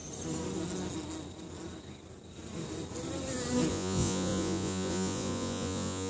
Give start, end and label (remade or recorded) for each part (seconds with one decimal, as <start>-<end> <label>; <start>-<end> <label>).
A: 0.0-3.7 recorded; 3.7-6.1 remade